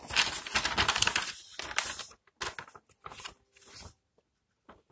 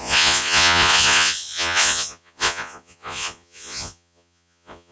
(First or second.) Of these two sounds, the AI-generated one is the second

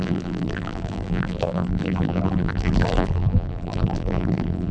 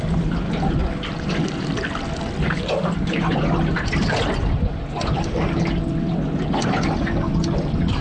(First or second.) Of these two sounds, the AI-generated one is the first